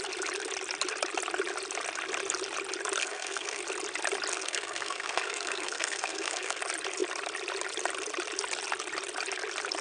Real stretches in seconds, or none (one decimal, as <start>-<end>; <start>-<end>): 0.0-3.0; 3.6-4.3; 6.6-9.8